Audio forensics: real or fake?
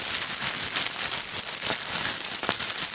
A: real